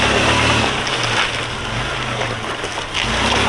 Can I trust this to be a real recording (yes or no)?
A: yes